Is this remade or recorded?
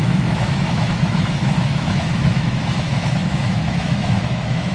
remade